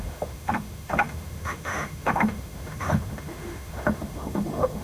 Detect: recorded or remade remade